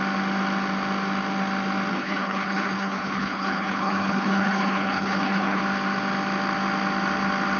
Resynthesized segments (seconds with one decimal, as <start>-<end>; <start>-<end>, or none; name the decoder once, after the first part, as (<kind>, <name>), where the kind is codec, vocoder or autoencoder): 1.9-5.6 (codec, HILCodec)